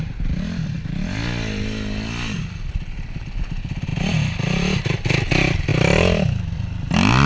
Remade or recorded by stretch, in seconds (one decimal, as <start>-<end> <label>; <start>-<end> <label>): 0.0-7.3 recorded